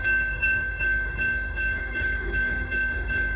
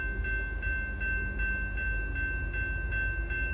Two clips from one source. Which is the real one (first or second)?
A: second